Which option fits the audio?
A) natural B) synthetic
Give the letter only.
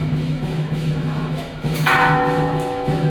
B